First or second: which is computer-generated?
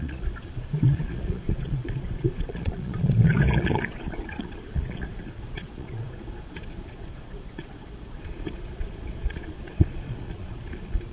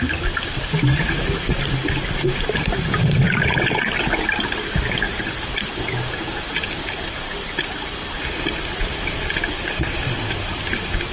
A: first